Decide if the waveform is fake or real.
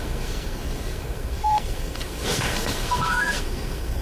fake